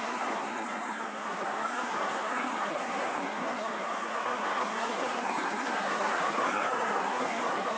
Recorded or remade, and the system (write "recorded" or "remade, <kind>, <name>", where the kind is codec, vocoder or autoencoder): remade, codec, SNAC